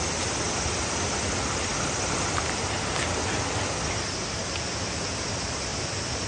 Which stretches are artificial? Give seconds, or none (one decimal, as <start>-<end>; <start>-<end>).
none